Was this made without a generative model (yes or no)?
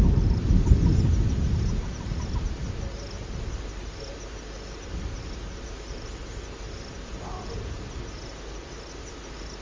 yes